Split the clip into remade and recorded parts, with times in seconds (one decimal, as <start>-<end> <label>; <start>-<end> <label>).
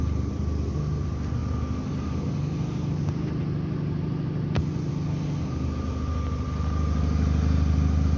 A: 0.0-8.2 recorded